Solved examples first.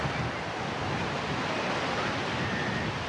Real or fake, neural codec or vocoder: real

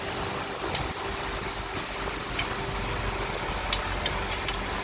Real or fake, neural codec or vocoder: real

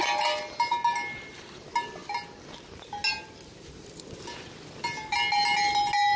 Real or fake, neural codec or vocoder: real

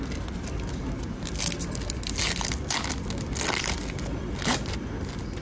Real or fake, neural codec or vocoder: real